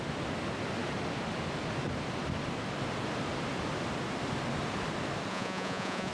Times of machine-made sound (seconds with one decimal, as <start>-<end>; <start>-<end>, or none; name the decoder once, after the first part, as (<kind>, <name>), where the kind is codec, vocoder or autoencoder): 5.3-6.1 (vocoder, Vocos)

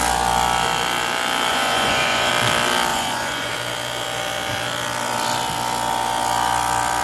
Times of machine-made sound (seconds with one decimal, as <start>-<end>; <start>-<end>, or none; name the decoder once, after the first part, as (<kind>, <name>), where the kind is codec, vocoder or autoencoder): 1.5-2.3 (vocoder, Vocos); 2.9-3.5

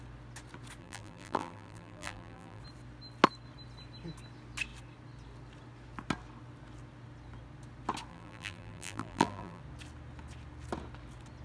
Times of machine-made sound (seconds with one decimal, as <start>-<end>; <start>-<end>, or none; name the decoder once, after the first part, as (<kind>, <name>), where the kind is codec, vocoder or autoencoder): 0.8-2.6 (vocoder, BigVGAN v2); 8.1-9.6

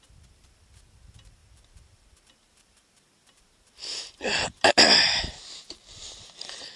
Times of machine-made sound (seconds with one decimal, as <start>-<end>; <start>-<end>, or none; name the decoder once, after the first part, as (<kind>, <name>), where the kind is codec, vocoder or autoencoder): none

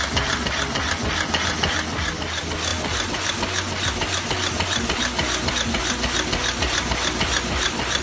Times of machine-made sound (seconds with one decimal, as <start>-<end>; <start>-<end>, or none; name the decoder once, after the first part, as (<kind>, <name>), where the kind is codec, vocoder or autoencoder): none

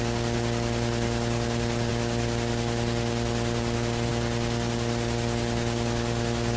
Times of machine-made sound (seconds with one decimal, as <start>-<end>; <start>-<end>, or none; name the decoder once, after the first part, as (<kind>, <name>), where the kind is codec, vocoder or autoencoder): none

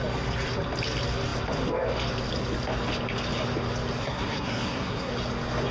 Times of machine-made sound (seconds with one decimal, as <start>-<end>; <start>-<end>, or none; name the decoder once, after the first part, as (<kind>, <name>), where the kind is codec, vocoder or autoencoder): 4.0-5.1 (codec, SNAC)